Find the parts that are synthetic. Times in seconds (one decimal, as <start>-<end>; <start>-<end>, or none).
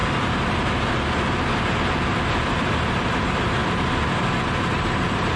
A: none